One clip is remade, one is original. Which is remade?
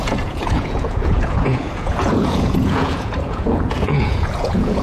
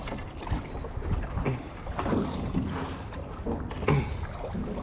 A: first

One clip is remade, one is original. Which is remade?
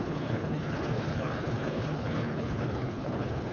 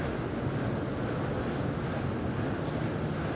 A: first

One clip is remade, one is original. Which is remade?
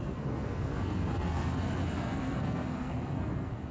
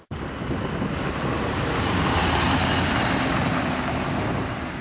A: first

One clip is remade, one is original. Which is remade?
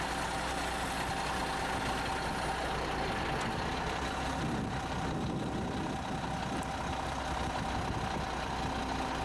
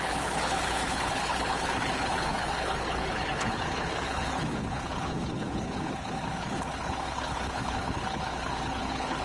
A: second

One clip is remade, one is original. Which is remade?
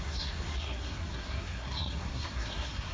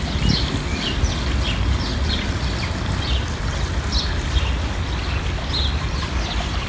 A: first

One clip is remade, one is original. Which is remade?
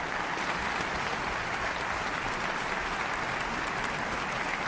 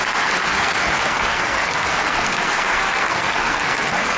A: second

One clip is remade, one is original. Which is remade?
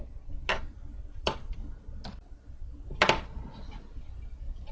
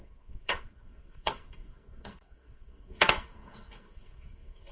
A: second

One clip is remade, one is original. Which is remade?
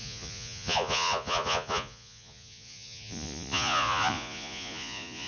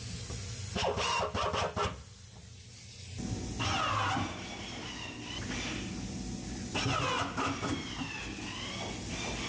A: first